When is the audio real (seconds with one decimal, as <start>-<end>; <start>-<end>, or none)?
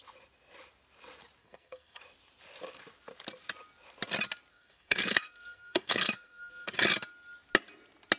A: 0.0-1.4; 2.0-4.5; 6.7-8.2